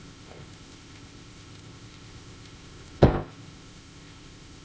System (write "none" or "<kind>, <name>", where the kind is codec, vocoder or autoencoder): codec, ZipCodec